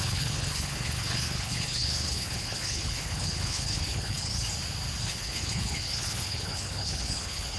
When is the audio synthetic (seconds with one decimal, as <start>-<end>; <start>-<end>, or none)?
0.0-4.3; 5.0-7.6